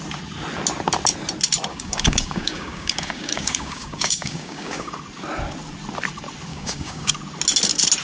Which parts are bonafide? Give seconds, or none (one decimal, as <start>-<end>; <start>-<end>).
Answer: 0.0-1.7; 4.9-6.5; 7.1-8.0